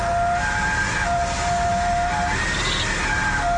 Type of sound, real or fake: real